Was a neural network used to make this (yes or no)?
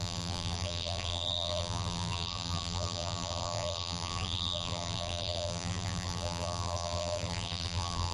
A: yes